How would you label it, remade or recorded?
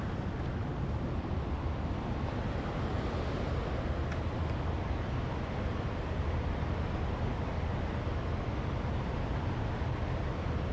recorded